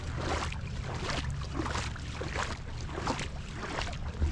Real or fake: real